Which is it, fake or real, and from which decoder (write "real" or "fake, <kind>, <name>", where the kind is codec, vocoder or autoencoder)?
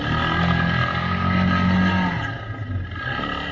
real